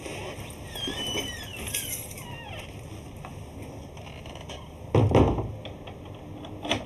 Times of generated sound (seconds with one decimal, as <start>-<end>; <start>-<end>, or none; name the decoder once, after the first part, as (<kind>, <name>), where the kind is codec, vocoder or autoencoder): none